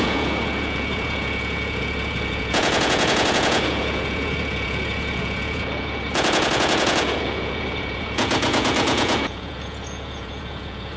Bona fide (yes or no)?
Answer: no